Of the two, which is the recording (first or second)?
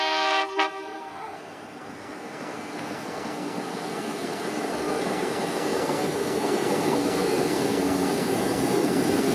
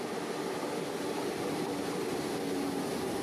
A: second